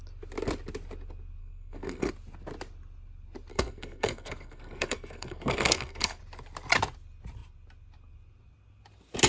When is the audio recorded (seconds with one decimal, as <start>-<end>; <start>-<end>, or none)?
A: 0.0-1.4; 2.1-3.5; 6.2-9.3